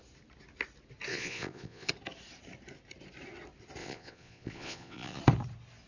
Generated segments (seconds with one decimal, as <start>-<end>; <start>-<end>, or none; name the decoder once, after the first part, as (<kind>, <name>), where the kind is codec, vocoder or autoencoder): 1.1-1.9 (vocoder, Vocos); 3.8-5.2